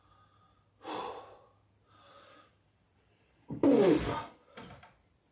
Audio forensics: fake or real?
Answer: real